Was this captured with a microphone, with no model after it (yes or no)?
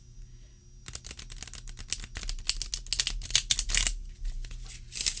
yes